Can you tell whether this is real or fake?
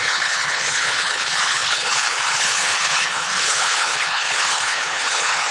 fake